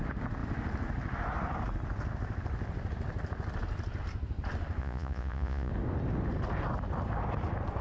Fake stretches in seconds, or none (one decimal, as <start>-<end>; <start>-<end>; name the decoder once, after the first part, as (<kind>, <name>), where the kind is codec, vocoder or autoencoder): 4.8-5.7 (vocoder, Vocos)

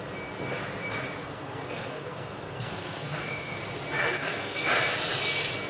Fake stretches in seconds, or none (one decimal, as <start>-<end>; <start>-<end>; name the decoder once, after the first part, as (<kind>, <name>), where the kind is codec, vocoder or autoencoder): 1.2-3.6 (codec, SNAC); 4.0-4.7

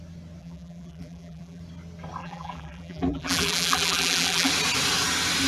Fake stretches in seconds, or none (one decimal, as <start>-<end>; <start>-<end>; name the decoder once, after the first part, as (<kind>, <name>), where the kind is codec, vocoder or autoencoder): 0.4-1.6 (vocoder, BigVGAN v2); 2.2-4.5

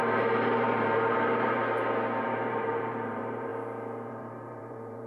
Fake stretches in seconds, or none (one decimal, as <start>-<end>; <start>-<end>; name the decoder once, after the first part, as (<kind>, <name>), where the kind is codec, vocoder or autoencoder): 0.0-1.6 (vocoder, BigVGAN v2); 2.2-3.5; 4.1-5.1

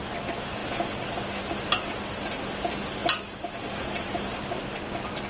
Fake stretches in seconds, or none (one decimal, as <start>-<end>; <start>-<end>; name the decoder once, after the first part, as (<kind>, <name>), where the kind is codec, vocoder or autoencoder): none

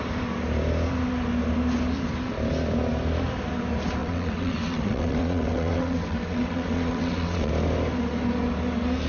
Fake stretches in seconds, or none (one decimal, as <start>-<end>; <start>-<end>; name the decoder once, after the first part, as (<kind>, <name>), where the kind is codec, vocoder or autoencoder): 4.0-7.5 (vocoder, WaveNeXt)

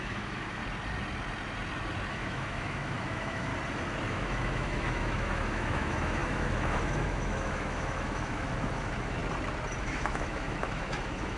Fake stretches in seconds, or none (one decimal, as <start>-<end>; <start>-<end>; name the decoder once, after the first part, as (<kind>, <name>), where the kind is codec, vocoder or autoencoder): 0.0-0.6 (autoencoder, DAC-VAE); 2.1-3.5; 4.1-9.2; 9.8-11.4